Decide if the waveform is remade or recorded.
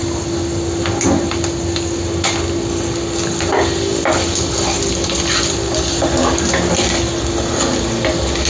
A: recorded